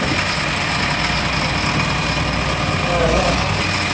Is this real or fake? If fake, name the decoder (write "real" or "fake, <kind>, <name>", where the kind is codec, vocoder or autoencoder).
real